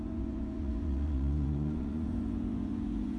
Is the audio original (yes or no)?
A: no